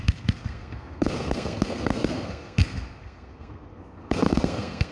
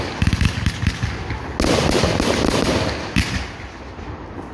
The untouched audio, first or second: second